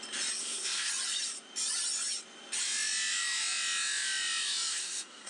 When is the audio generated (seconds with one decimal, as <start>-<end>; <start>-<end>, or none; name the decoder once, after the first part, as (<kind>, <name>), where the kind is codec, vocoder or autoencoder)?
0.4-0.9 (codec, SNAC); 4.7-5.3